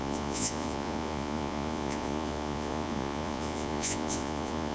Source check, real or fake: fake